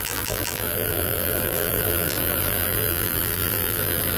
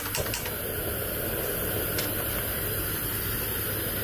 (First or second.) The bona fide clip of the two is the second